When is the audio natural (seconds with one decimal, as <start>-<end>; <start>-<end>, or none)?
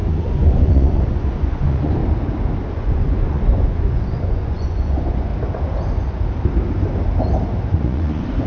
2.0-2.7; 5.3-7.7